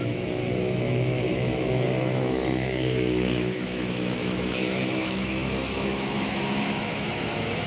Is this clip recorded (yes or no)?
no